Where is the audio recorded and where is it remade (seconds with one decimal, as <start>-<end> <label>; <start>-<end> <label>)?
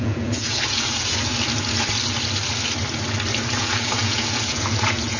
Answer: 0.0-1.3 remade; 1.3-3.6 recorded; 3.6-5.2 remade